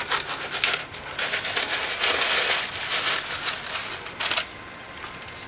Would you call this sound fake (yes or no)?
no